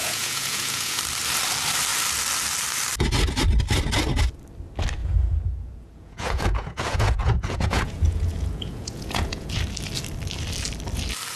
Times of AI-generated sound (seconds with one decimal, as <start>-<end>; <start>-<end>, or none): 0.0-1.0; 5.0-9.5

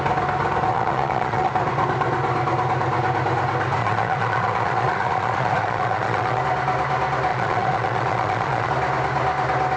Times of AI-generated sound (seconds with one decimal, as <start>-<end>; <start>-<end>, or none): 0.7-1.5; 3.8-6.4; 7.3-8.7